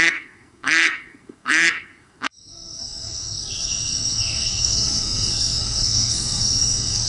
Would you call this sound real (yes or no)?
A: no